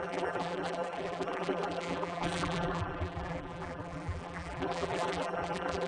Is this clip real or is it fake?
fake